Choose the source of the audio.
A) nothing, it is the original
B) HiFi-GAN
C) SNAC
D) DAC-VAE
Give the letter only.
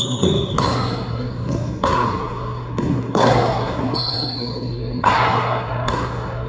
C